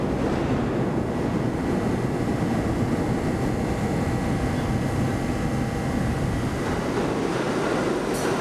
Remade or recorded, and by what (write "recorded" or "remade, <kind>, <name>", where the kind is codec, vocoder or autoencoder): recorded